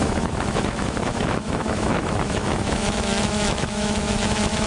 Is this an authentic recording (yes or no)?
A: no